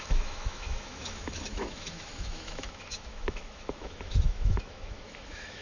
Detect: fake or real fake